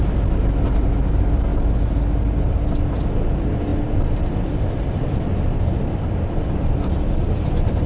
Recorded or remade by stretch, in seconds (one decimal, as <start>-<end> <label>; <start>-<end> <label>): 0.0-3.7 recorded; 3.7-5.0 remade; 5.0-7.9 recorded